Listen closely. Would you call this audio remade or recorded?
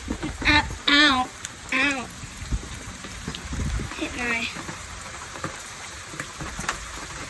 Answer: remade